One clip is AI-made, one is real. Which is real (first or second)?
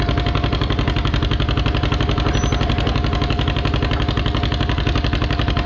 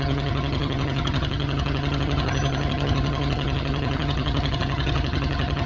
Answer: first